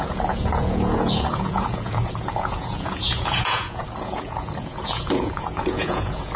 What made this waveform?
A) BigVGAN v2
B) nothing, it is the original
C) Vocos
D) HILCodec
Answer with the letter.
C